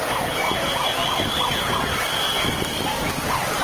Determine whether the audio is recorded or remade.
recorded